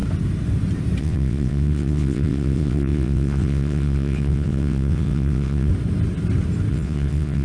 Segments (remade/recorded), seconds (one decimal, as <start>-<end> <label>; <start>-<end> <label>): 0.0-1.0 recorded; 1.0-5.7 remade; 5.7-6.7 recorded; 6.7-7.4 remade